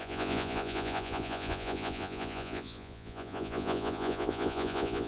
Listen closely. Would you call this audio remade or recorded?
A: remade